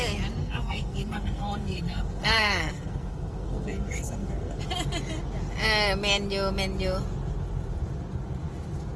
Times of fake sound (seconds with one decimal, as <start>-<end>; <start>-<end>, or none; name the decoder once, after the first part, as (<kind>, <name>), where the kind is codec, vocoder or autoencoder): 0.4-4.6 (codec, SNAC)